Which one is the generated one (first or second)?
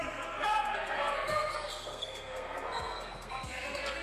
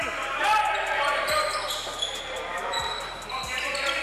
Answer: first